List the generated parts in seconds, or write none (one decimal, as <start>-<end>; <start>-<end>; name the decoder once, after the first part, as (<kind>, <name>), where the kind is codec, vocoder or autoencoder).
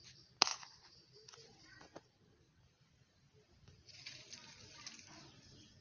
0.5-3.9 (vocoder, BigVGAN v2)